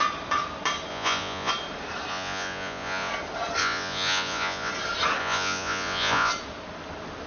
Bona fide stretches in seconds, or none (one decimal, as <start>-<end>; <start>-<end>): 0.0-0.9; 1.5-2.1; 3.1-3.6; 4.7-5.2; 6.3-7.3